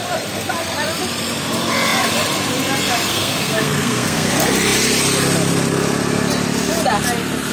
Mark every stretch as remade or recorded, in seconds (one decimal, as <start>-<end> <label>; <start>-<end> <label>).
0.0-3.1 recorded; 3.1-4.3 remade; 4.3-7.5 recorded